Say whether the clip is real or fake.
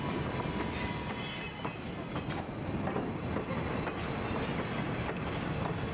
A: real